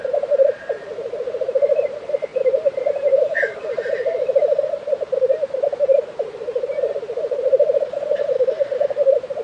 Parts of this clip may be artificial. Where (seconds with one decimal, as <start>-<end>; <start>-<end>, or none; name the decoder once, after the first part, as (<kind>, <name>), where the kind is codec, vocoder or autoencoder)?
none